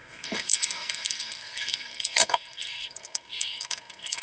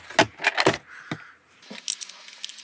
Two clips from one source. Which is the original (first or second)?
second